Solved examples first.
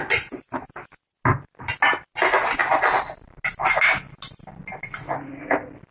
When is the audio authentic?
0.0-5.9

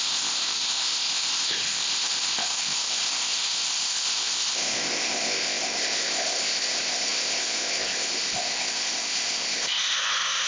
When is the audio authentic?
none

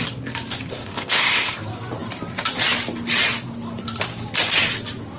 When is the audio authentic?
0.0-0.7; 1.6-5.2

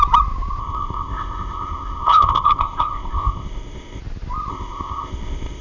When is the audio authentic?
0.0-0.6; 4.0-4.5

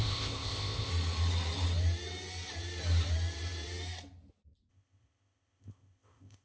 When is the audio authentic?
0.9-4.7

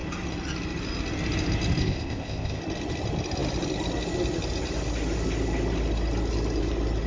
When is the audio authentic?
0.0-1.8; 2.6-7.1